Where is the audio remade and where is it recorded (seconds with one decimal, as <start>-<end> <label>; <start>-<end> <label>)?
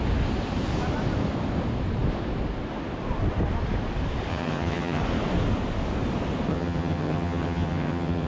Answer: 0.0-4.3 recorded; 4.3-5.0 remade; 5.0-6.5 recorded; 6.5-8.3 remade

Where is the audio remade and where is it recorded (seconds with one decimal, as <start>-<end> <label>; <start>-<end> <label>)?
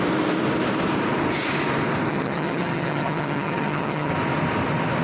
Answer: 0.0-2.1 recorded; 2.1-4.1 remade; 4.1-5.0 recorded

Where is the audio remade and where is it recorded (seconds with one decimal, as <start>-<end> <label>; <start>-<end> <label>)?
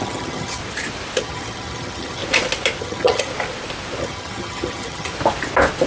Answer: 0.0-0.6 remade; 0.6-1.2 recorded; 1.2-2.2 remade; 2.2-2.8 recorded; 2.8-3.3 remade; 3.3-4.0 recorded; 4.0-5.1 remade; 5.1-5.9 recorded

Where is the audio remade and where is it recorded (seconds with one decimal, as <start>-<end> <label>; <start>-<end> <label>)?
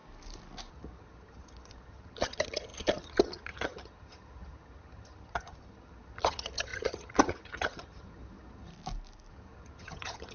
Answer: 0.0-0.7 recorded; 0.7-8.7 remade; 8.7-9.3 recorded; 9.3-10.3 remade